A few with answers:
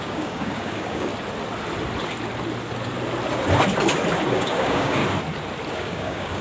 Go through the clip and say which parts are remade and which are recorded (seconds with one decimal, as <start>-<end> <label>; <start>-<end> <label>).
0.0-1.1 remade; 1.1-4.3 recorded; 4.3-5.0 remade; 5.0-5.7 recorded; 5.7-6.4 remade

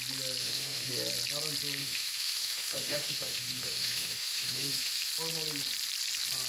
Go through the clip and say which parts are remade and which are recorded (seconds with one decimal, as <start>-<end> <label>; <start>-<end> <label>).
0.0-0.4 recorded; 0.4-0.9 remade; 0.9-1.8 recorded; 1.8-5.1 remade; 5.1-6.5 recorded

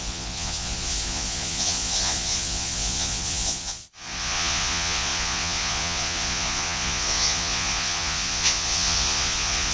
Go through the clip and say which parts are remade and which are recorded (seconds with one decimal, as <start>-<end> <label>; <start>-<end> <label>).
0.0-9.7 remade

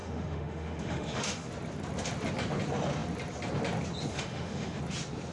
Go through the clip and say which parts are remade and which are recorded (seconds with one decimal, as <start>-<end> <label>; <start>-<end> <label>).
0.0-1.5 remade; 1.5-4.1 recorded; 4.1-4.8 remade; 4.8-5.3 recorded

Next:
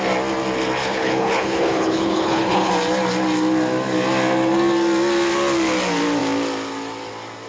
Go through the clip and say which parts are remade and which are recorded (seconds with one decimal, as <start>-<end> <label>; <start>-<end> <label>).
0.0-0.8 recorded; 0.8-2.7 remade; 2.7-7.5 recorded